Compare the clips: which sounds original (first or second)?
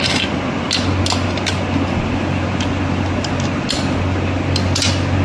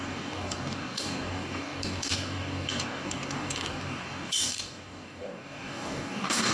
first